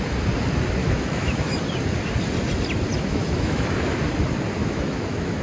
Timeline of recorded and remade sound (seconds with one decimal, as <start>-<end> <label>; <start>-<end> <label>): 0.0-0.8 recorded; 0.8-1.6 remade; 1.6-3.1 recorded; 3.1-4.0 remade; 4.0-4.6 recorded; 4.6-5.4 remade